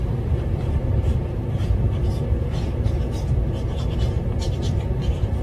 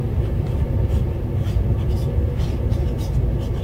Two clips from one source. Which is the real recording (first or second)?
second